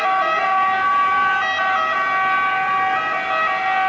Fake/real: real